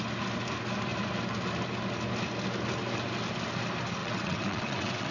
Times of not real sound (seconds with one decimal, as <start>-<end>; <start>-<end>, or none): 4.0-5.1